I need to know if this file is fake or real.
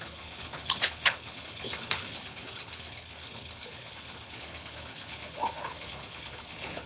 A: fake